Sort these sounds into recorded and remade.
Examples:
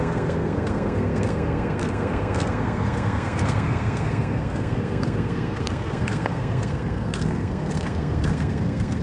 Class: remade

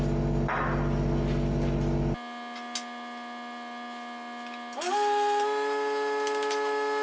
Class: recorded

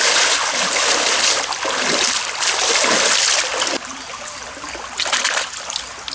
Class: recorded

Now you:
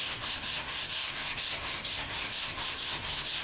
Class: remade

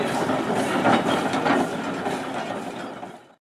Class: recorded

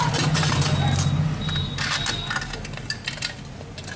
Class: recorded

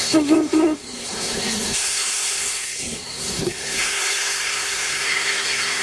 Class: remade